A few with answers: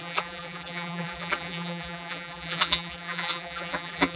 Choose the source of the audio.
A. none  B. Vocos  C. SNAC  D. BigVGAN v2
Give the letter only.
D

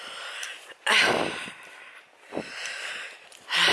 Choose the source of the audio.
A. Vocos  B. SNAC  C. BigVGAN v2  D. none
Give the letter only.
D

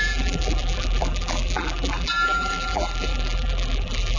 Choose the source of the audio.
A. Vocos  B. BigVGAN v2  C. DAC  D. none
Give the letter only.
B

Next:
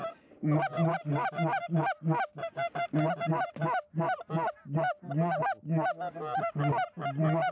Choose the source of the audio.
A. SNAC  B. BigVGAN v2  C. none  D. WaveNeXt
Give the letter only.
C